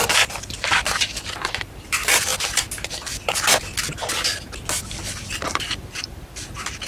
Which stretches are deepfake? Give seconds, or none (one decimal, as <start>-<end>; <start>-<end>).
0.0-2.3; 4.9-6.9